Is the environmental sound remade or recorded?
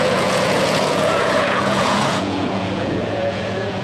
remade